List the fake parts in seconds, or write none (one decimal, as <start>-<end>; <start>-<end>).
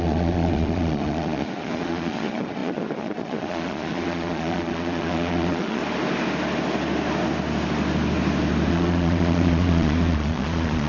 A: 0.0-5.8; 8.7-10.9